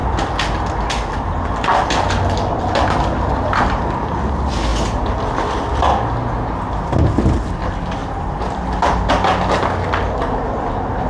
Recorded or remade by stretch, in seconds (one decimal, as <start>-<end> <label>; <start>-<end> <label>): 0.0-8.0 recorded; 8.0-8.9 remade; 8.9-11.1 recorded